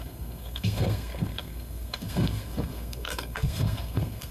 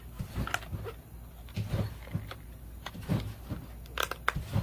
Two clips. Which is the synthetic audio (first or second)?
first